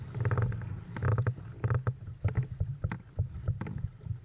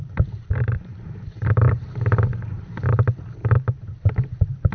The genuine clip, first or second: first